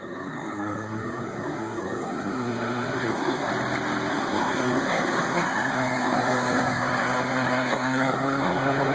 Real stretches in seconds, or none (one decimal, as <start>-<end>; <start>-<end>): 3.5-4.1